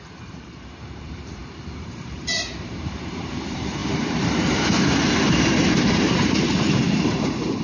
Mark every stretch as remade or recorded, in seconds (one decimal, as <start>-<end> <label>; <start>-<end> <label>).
0.0-7.6 remade